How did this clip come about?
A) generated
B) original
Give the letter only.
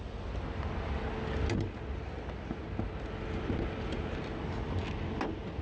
B